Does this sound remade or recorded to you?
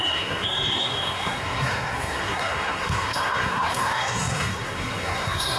remade